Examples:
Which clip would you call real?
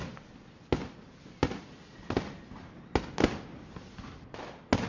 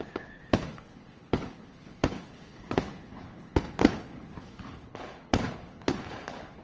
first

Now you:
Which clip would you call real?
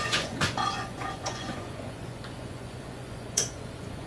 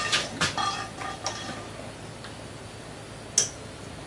second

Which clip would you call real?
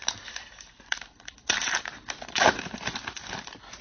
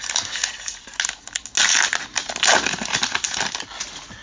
second